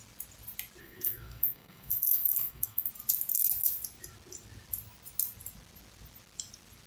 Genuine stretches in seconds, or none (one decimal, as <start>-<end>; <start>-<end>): 0.0-0.8; 2.9-6.9